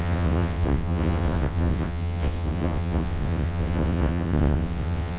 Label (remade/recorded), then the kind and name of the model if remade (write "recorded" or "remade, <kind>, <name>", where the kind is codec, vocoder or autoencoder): remade, vocoder, WaveNeXt